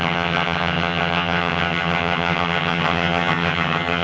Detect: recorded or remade remade